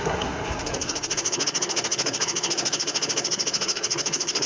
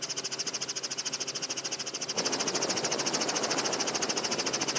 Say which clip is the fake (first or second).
first